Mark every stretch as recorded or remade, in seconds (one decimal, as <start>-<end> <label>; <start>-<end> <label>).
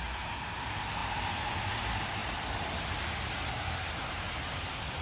0.0-5.0 recorded